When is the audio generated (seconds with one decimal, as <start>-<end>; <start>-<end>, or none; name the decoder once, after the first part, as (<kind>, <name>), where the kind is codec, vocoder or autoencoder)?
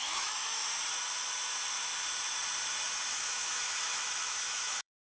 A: 0.0-0.6 (autoencoder, DAC-VAE); 3.1-5.1